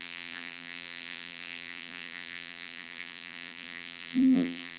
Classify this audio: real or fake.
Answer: fake